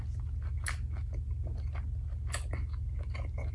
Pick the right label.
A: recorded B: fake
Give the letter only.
A